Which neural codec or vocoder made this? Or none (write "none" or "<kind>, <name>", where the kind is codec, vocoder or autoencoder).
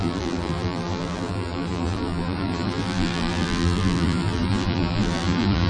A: vocoder, BigVGAN v2